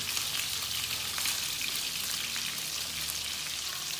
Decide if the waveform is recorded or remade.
recorded